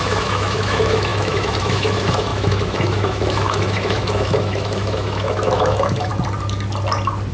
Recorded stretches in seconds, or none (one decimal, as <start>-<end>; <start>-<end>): 6.1-7.3

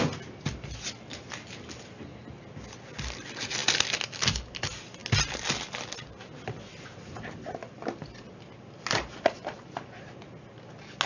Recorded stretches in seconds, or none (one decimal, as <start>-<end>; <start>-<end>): 0.0-11.1

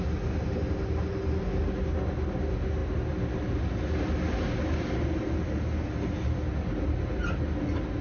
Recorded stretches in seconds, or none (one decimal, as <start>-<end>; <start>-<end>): 0.0-8.0

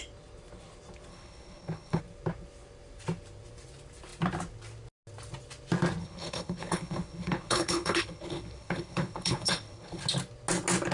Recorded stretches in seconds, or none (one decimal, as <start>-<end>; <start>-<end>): 0.0-1.1; 2.0-6.0; 10.0-10.9

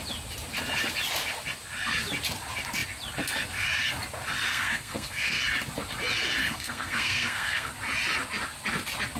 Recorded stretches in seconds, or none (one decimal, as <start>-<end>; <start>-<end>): 0.0-4.5; 5.4-6.4; 7.7-9.2

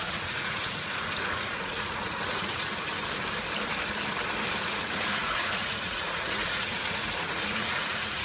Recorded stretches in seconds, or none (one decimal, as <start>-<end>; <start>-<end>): 2.7-4.6

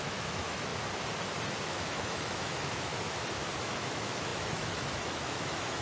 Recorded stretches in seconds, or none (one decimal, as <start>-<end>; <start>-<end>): 0.7-1.6; 2.9-3.6

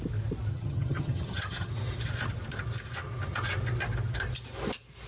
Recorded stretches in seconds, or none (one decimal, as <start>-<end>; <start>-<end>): 0.0-0.5; 1.7-5.1